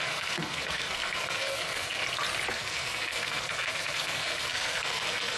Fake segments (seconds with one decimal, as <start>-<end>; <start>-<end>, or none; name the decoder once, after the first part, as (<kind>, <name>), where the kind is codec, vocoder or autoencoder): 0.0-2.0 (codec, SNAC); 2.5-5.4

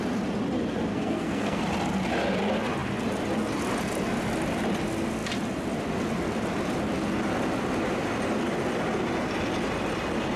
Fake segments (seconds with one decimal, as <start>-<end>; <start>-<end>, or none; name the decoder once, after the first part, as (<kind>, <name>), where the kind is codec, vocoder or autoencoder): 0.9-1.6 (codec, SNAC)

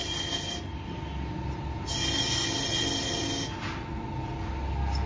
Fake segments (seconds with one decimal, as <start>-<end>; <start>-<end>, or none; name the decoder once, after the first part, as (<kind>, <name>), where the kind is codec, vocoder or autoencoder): none

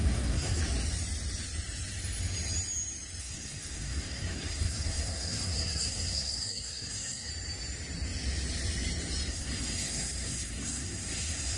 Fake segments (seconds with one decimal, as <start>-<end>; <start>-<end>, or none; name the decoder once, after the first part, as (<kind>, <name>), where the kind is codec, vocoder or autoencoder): 0.0-0.6 (codec, SNAC); 3.2-7.3; 9.3-11.6